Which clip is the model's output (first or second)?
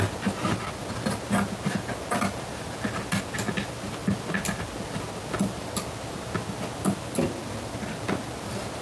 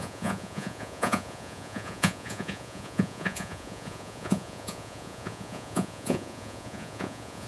second